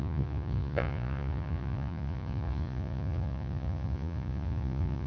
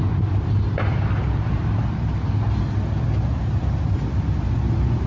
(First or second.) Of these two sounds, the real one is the second